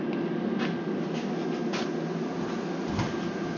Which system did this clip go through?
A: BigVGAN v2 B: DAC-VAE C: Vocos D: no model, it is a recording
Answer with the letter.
D